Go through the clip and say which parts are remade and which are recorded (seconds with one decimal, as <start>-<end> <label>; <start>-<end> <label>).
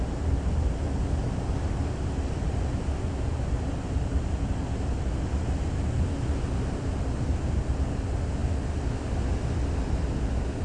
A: 0.0-10.6 recorded